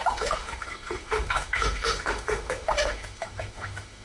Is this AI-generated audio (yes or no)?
yes